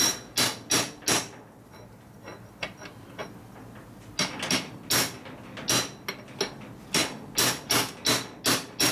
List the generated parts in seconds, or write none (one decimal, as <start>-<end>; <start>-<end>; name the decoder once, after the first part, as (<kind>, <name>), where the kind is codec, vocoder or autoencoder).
none